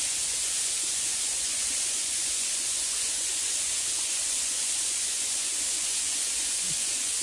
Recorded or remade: remade